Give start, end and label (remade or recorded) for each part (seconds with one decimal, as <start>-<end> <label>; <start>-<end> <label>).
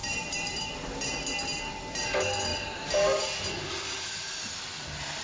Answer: 0.0-0.5 remade; 0.5-5.2 recorded